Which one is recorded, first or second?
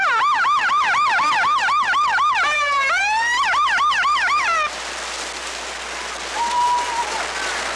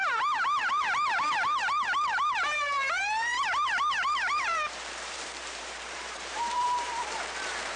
first